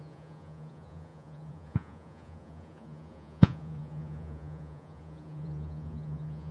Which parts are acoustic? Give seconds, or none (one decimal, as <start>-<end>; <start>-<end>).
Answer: none